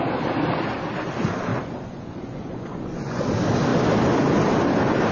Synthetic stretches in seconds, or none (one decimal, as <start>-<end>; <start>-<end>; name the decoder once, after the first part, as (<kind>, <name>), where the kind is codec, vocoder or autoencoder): 1.5-3.2 (vocoder, Vocos)